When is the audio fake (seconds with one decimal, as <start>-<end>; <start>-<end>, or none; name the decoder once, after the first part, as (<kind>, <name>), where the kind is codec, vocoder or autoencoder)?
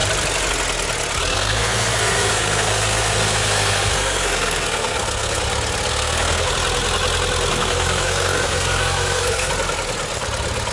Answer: 1.3-5.4 (codec, SNAC); 5.9-6.5; 7.5-9.5